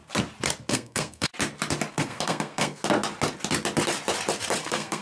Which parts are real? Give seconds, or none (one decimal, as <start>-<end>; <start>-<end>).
0.0-0.7; 1.3-1.9; 2.8-4.6